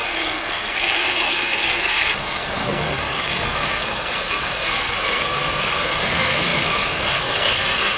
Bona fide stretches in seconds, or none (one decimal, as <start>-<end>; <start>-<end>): none